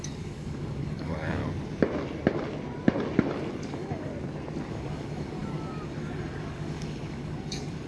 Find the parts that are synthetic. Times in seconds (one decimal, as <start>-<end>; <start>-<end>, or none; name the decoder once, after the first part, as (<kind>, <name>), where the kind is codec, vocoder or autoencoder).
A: 0.0-1.4 (codec, DAC); 3.5-4.1; 4.7-7.9